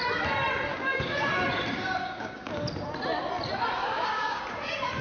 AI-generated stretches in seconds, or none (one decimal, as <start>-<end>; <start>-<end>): 0.7-1.3; 2.0-2.5; 3.8-4.4

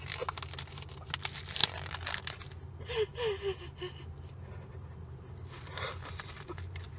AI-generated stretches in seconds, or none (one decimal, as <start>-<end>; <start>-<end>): none

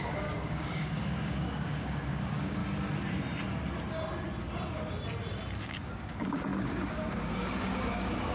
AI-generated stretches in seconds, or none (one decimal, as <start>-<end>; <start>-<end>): 0.0-2.6; 5.6-8.3

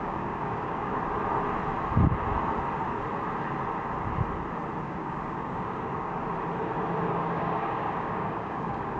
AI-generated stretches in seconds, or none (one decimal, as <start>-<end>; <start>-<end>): 0.0-0.9; 4.8-6.2; 7.1-9.0

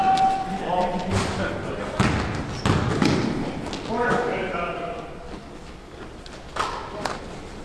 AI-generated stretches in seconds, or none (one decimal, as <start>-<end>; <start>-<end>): 5.4-6.1

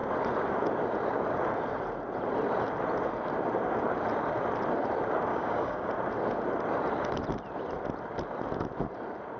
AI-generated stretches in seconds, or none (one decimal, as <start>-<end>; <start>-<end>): 5.3-5.9

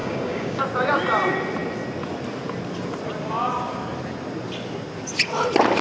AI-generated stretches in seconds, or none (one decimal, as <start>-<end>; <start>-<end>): 0.0-0.6